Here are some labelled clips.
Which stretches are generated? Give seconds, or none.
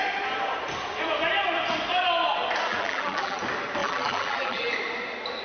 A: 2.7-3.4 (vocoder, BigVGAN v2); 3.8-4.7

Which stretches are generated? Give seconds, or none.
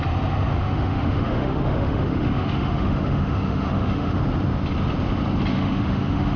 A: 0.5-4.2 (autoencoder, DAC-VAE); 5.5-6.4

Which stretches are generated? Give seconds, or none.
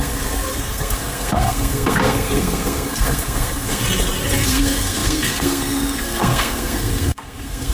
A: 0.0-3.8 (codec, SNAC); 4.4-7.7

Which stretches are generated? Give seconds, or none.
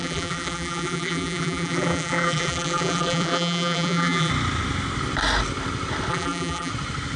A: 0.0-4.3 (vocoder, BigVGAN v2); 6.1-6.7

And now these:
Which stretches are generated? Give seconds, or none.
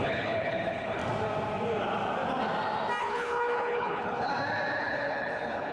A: 0.0-1.0 (codec, HILCodec); 3.0-4.3; 4.8-5.7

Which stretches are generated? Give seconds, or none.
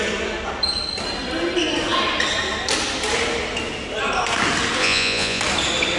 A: 4.8-5.4 (vocoder, Vocos)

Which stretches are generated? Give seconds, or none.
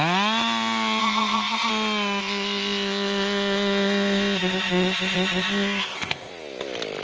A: 1.0-1.7 (codec, ZipCodec); 2.2-6.3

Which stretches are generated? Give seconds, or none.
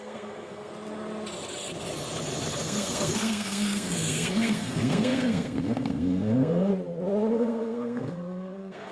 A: 0.0-0.7 (codec, SNAC); 2.6-6.7; 7.3-8.9